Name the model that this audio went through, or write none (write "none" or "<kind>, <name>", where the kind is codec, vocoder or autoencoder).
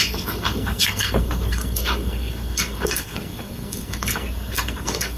codec, SNAC